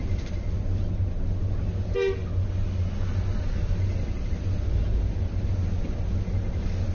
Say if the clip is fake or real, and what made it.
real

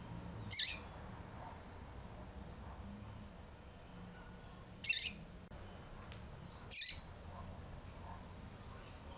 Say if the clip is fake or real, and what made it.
real